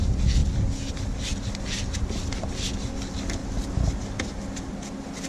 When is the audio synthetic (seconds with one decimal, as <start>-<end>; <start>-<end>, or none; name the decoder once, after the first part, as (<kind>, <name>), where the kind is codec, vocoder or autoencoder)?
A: 3.4-4.2 (vocoder, BigVGAN v2)